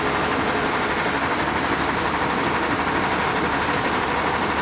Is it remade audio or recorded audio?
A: recorded